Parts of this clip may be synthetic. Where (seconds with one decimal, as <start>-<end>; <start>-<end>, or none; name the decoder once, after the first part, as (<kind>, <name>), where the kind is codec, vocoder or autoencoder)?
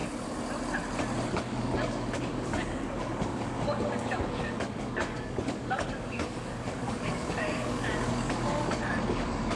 1.3-9.6 (codec, DAC)